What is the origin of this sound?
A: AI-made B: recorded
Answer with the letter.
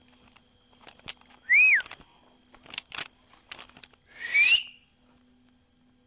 B